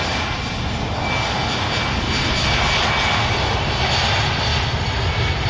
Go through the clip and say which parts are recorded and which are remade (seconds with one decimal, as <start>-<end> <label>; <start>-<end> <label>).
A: 0.0-5.5 recorded